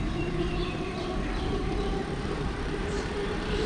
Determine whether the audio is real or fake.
fake